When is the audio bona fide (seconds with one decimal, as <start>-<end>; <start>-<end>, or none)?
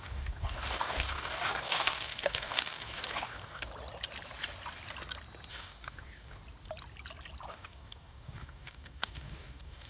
3.7-5.5; 6.4-7.5